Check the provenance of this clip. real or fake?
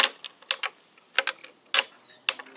real